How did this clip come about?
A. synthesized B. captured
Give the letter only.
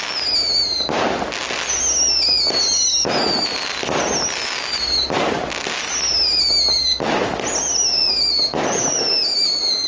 B